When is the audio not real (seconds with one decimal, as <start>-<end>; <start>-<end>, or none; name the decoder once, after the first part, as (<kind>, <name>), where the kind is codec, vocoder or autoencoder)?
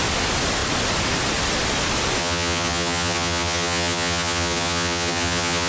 2.2-5.7 (vocoder, HiFi-GAN)